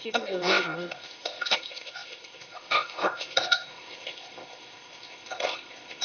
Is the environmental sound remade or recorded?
remade